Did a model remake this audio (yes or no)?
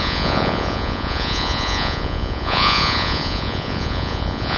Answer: yes